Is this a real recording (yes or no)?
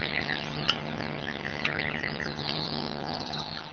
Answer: no